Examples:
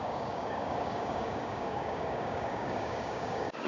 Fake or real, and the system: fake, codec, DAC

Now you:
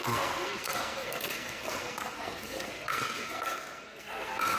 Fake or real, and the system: fake, codec, SNAC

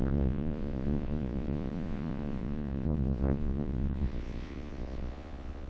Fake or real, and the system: fake, vocoder, Vocos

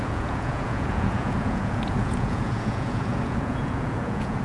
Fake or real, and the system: fake, vocoder, Vocos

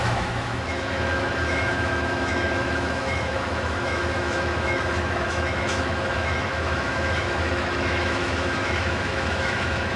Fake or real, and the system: fake, autoencoder, DAC-VAE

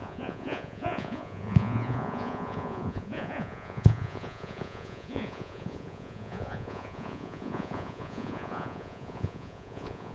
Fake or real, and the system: fake, vocoder, Vocos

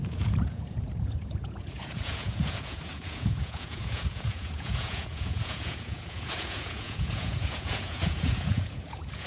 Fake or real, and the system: fake, vocoder, Vocos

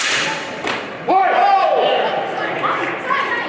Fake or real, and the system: real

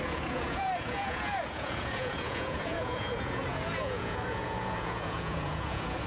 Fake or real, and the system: fake, vocoder, Vocos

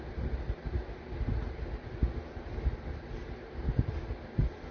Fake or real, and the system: real